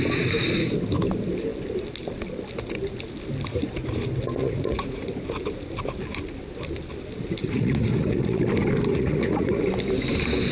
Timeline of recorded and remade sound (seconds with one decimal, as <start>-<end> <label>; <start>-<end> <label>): 0.0-4.4 recorded; 4.4-5.2 remade; 5.2-7.4 recorded; 7.4-8.4 remade; 8.4-8.9 recorded; 8.9-9.6 remade; 9.6-10.5 recorded